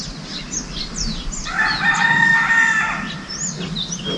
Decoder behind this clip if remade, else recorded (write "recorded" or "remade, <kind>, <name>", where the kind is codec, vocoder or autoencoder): recorded